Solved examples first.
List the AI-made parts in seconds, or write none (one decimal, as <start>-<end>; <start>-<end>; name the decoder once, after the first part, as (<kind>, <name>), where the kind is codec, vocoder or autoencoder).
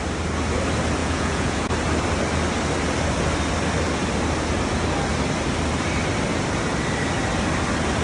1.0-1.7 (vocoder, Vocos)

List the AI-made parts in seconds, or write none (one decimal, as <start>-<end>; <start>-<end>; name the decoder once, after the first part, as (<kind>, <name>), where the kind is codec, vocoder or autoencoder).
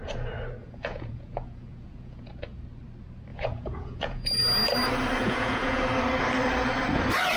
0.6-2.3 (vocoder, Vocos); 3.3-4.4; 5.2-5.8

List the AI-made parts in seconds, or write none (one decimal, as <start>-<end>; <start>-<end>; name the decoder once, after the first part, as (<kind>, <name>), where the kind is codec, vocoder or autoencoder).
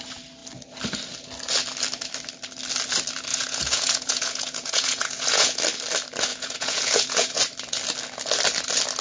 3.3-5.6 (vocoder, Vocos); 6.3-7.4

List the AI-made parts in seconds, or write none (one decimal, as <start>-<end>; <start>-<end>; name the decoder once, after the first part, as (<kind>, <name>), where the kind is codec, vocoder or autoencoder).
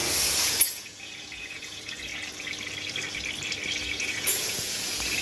0.0-2.1 (vocoder, Vocos); 3.8-5.2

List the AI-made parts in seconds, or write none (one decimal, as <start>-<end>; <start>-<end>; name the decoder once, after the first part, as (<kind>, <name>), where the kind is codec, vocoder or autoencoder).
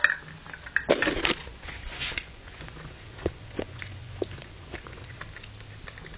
1.5-5.2 (vocoder, Vocos)